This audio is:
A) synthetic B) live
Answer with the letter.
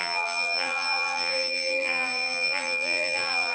A